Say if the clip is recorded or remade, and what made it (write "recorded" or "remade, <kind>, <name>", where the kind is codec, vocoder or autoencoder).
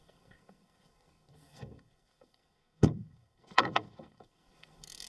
remade, codec, SNAC